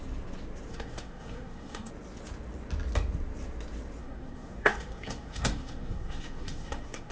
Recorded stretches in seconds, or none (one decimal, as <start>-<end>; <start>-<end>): 0.0-0.7; 1.9-4.0